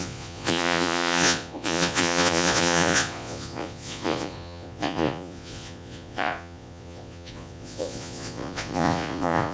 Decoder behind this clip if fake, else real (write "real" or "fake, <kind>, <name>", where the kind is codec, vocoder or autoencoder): fake, vocoder, Vocos